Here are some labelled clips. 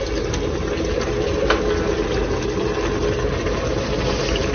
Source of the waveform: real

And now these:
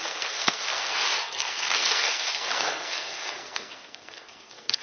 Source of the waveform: fake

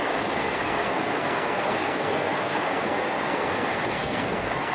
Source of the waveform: fake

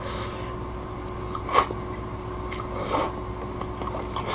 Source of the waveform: real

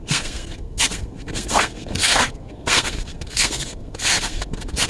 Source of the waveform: fake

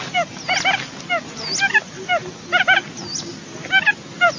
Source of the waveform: real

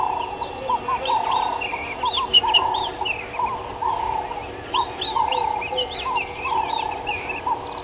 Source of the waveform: real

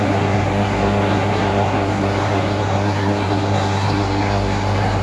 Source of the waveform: fake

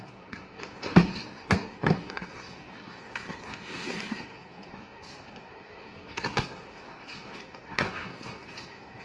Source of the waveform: fake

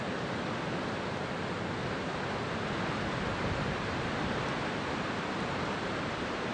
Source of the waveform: real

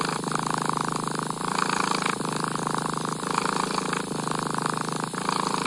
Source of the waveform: real